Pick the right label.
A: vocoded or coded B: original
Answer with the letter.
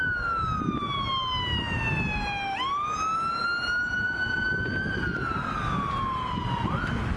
B